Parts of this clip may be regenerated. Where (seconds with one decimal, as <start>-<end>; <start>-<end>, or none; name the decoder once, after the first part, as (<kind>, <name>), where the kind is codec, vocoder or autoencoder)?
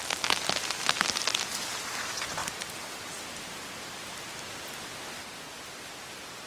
none